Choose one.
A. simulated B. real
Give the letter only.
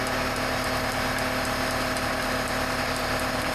B